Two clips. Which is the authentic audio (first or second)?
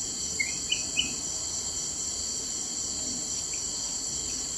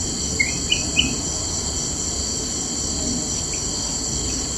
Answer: second